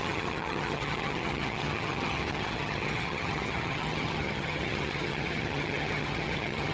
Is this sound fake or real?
fake